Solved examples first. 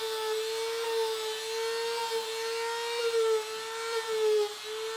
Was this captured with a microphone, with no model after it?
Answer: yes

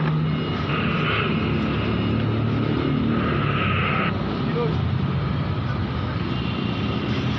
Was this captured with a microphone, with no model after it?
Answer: yes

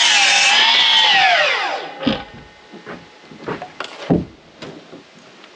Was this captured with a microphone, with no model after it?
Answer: yes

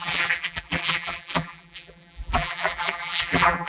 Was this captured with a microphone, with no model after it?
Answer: no